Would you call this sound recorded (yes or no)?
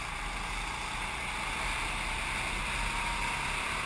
yes